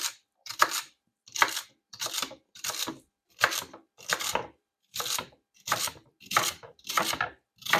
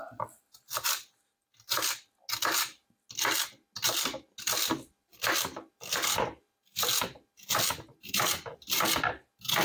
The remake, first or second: first